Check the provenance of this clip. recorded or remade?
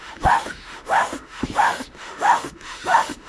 remade